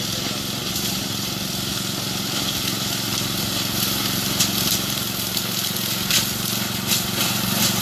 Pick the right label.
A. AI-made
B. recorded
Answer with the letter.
B